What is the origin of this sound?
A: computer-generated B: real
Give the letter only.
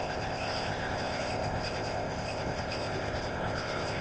A